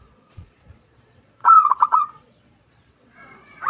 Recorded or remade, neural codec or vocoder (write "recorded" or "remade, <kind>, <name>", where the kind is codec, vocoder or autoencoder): remade, vocoder, Vocos